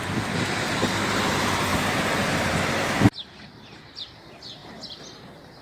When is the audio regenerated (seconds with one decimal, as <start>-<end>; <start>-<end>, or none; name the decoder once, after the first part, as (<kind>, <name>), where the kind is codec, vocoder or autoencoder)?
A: 1.7-3.8 (vocoder, BigVGAN v2)